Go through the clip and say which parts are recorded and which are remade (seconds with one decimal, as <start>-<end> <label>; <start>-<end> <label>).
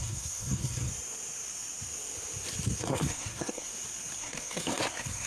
0.0-0.9 remade; 0.9-2.8 recorded; 2.8-3.7 remade; 3.7-4.2 recorded; 4.2-5.3 remade